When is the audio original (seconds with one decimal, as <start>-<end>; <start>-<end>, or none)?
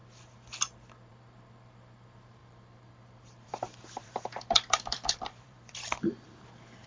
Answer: 0.0-2.4; 6.4-6.9